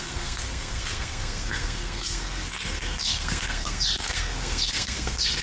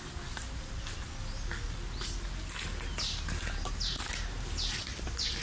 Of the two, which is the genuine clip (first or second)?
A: second